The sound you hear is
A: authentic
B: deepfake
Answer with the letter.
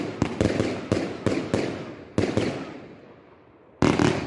A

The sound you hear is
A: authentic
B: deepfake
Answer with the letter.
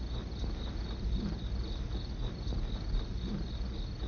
A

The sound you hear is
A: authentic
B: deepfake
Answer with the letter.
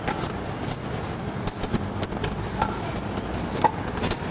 A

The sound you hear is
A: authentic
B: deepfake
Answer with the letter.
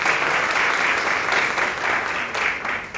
A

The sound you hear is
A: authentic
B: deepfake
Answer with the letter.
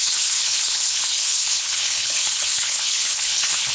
B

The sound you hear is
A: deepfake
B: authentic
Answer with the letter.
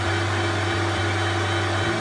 B